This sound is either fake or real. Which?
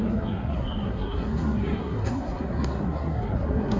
fake